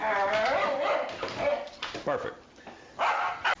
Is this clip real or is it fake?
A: real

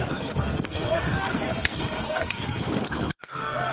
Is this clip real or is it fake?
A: fake